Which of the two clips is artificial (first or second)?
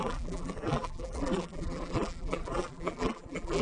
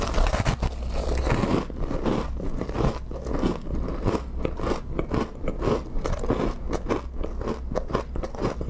first